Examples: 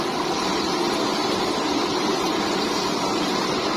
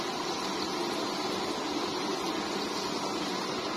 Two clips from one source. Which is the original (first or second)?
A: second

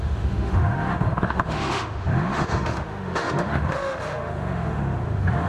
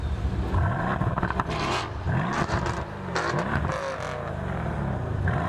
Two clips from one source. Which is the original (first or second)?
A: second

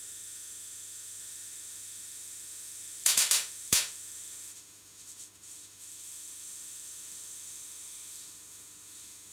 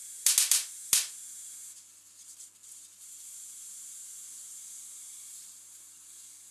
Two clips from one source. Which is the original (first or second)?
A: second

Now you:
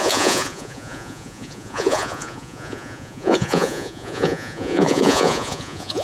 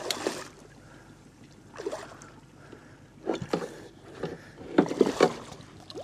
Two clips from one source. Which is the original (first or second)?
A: second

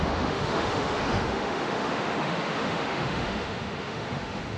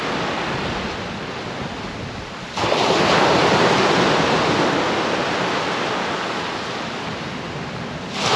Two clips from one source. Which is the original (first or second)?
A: second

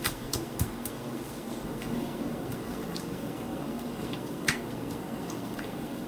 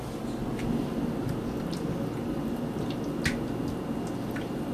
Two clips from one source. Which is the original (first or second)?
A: second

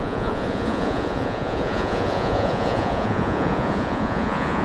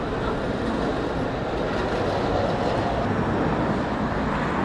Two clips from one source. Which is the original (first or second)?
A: second